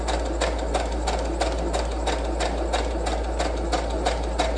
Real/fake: real